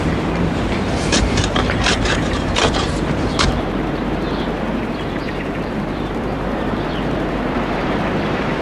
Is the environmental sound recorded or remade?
remade